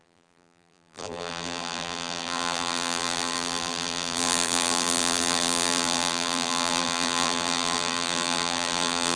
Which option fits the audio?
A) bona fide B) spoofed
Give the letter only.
B